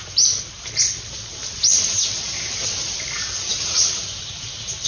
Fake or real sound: real